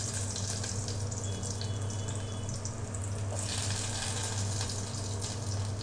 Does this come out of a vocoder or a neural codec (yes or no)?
no